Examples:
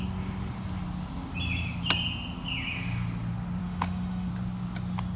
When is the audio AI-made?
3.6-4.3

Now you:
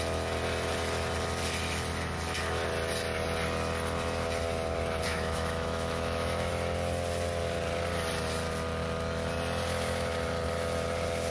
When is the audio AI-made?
5.1-6.5

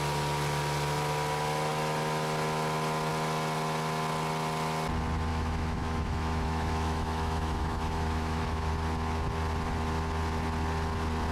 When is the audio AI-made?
5.3-8.7

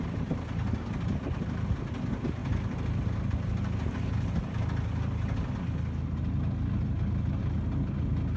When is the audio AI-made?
none

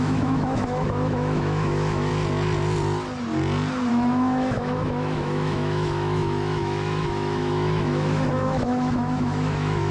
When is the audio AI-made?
0.0-2.1; 3.9-9.9